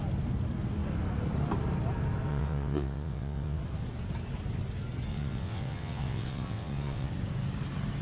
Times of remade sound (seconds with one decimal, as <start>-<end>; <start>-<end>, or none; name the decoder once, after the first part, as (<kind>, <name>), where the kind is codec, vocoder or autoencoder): 2.3-3.6 (vocoder, WaveNeXt); 5.1-7.1